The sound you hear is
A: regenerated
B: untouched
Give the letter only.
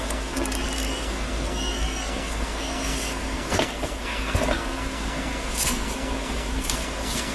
A